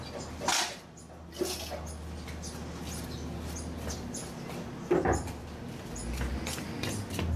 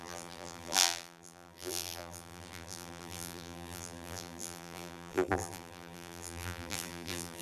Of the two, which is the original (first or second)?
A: first